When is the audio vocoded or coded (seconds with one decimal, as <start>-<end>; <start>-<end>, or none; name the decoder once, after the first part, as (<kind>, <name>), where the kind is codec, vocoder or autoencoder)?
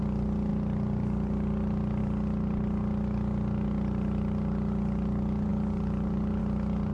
none